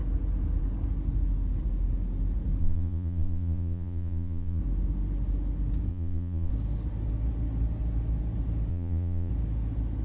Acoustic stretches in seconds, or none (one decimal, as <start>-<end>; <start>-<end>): 0.0-2.6; 4.6-5.9; 6.5-8.7; 9.3-10.0